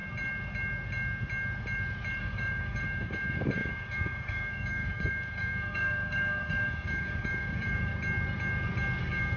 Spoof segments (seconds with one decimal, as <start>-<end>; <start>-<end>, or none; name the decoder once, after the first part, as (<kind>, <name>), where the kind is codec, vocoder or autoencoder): 2.2-7.9 (codec, DAC); 9.0-9.4